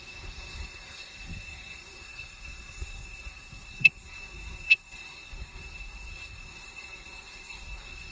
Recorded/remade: remade